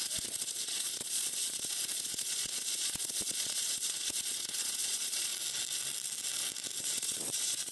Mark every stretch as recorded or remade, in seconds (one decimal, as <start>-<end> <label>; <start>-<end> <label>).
0.0-5.3 remade; 5.3-6.8 recorded; 6.8-7.7 remade